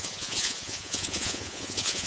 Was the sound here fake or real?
fake